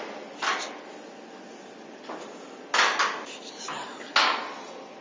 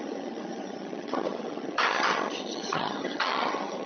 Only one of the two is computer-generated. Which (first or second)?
second